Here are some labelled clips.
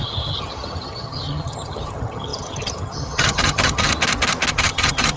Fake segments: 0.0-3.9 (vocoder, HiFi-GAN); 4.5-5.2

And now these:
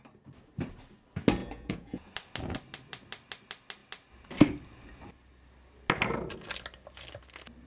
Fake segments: 1.4-2.1 (vocoder, Vocos)

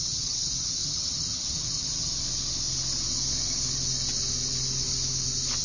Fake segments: 0.0-2.1 (vocoder, HiFi-GAN)

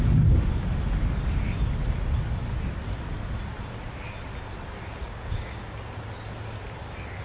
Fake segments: 5.0-5.6 (codec, DAC)